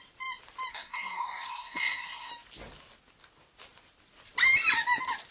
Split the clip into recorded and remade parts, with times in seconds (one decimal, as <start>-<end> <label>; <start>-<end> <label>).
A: 0.0-0.7 recorded; 0.7-2.3 remade; 2.3-5.3 recorded

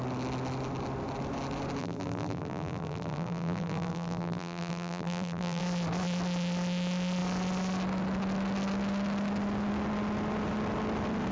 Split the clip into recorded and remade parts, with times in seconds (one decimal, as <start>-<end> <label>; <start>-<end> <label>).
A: 0.0-1.8 recorded; 1.8-5.6 remade; 5.6-11.3 recorded

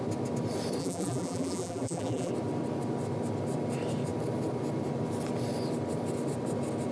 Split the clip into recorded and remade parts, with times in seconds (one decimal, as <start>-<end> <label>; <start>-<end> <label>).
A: 0.0-0.8 recorded; 0.8-2.3 remade; 2.3-6.9 recorded

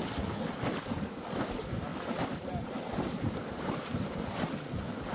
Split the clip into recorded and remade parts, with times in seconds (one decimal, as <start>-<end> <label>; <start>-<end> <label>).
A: 0.0-1.9 recorded; 1.9-5.1 remade

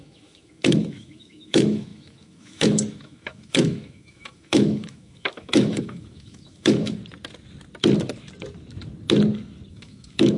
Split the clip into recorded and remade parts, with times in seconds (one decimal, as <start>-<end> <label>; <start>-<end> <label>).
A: 0.0-7.0 remade; 7.0-9.7 recorded; 9.7-10.4 remade

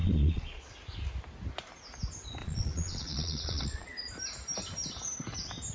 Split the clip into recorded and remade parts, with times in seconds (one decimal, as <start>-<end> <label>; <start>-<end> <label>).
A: 0.0-0.7 remade; 0.7-2.4 recorded; 2.4-4.1 remade; 4.1-5.7 recorded

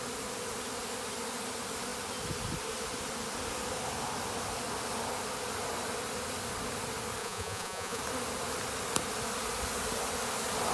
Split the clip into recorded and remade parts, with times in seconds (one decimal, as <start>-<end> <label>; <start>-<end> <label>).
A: 0.0-7.2 recorded; 7.2-8.0 remade; 8.0-10.7 recorded